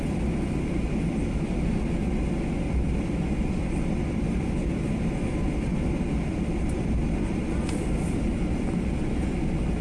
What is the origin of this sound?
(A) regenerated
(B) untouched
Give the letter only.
B